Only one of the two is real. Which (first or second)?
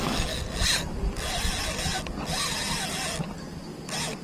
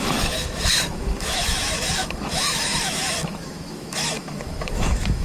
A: first